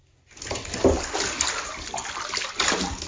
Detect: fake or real real